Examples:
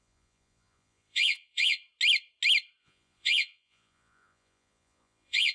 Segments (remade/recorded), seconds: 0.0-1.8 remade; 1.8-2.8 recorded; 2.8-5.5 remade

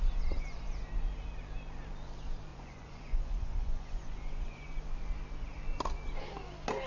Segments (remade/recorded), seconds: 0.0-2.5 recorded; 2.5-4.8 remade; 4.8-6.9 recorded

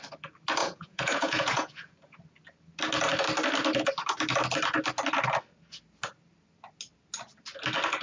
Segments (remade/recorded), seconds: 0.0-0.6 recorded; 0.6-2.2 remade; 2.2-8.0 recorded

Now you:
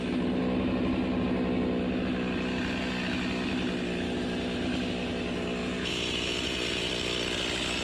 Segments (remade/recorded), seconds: 0.0-5.6 recorded; 5.6-6.9 remade; 6.9-7.8 recorded

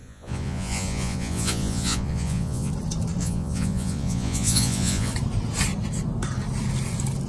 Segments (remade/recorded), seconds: 0.0-2.7 remade; 2.7-3.2 recorded; 3.2-5.1 remade; 5.1-7.3 recorded

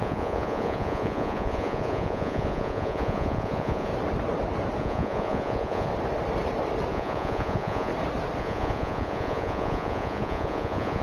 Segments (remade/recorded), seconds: 0.0-3.9 remade; 3.9-4.8 recorded; 4.8-5.9 remade; 5.9-6.9 recorded; 6.9-7.9 remade; 7.9-8.4 recorded; 8.4-11.0 remade

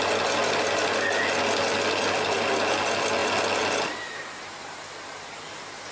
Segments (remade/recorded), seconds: 0.0-5.9 recorded